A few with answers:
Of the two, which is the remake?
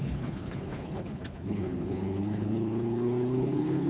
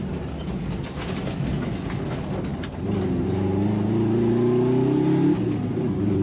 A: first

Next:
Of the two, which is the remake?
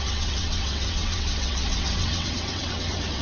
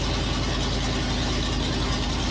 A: first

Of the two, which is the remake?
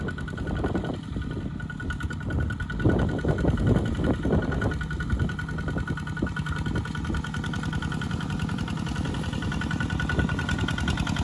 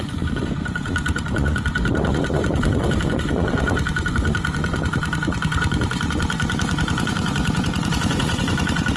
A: second